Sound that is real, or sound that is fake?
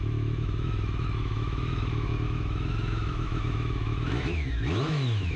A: fake